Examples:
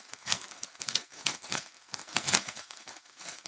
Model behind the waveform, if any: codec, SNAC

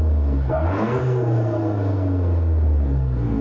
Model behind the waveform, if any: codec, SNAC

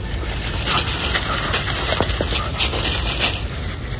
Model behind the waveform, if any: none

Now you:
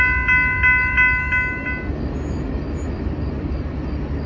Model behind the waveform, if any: none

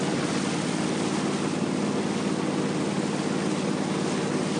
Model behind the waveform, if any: none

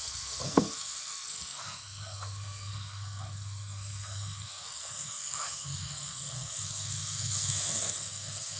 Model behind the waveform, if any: codec, SNAC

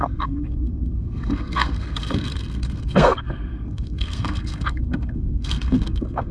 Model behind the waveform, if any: codec, SNAC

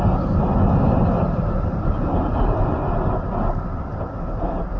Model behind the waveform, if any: none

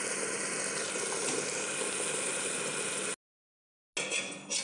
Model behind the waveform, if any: none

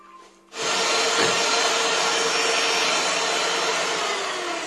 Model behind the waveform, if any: none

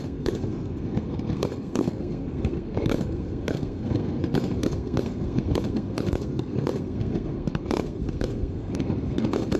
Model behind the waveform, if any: codec, SNAC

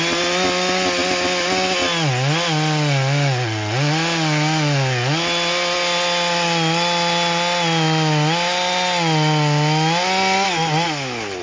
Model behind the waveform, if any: none